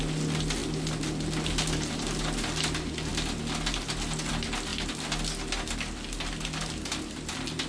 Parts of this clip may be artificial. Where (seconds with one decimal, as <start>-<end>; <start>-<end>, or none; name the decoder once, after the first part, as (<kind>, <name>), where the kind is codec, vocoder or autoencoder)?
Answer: none